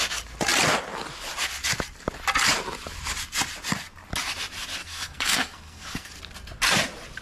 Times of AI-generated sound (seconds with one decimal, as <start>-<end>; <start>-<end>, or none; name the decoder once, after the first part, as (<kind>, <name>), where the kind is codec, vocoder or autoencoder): 4.8-6.2 (codec, SNAC)